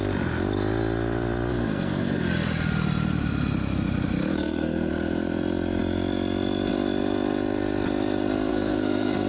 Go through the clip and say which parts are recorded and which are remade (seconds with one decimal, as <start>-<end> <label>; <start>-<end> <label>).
0.0-1.5 recorded; 1.5-2.2 remade; 2.2-4.3 recorded; 4.3-4.9 remade; 4.9-8.5 recorded; 8.5-9.3 remade